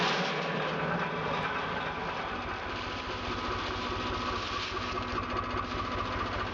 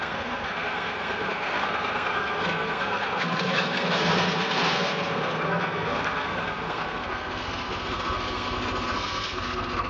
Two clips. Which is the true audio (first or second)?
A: first